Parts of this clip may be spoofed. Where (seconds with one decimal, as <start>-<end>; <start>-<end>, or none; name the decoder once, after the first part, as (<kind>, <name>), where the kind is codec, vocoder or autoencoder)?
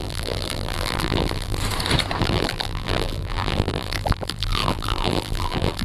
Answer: 0.0-1.6 (vocoder, BigVGAN v2); 2.2-5.8